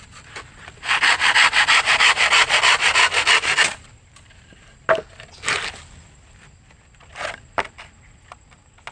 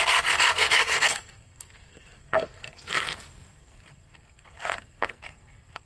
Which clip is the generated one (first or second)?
second